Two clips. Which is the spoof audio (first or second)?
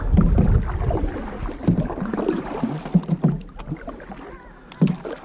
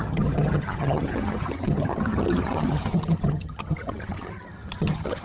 second